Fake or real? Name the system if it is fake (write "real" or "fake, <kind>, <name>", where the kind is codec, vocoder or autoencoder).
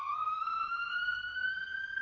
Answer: fake, codec, SNAC